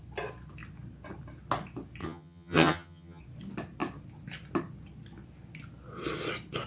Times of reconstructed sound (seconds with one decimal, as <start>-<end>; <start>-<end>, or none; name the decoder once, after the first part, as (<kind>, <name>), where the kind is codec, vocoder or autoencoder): 2.0-3.2 (vocoder, HiFi-GAN)